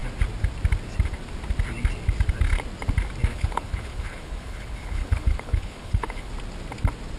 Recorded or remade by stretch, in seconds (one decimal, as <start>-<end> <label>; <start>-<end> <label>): 0.0-3.3 recorded; 3.3-6.3 remade; 6.3-7.2 recorded